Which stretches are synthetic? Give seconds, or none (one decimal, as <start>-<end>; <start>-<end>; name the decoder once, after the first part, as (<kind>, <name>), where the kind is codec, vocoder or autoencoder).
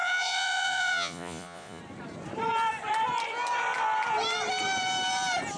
0.0-1.8 (vocoder, Vocos)